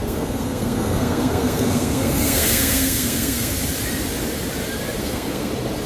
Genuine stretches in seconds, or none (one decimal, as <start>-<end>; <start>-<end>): 3.5-5.0; 5.5-5.9